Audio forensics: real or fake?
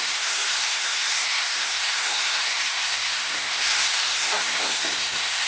fake